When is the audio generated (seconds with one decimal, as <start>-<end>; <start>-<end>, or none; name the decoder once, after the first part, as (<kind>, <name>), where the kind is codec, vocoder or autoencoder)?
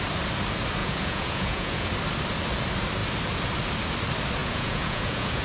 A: 0.8-1.9 (vocoder, Vocos); 4.4-5.4